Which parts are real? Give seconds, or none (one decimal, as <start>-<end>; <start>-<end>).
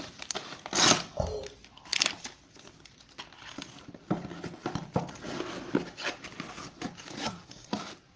0.0-7.2; 7.7-8.2